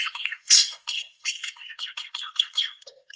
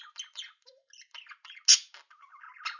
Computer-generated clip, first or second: first